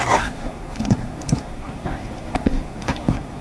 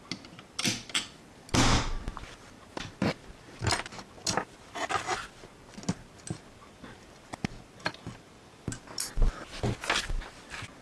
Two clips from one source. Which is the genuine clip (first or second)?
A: second